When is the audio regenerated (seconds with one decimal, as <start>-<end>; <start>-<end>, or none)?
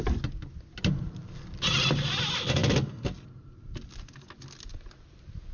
none